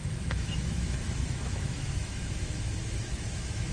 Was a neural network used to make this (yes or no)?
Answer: yes